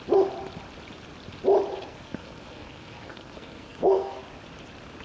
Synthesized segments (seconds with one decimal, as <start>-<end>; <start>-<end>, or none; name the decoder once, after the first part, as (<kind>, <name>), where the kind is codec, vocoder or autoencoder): 1.7-4.2 (codec, SNAC)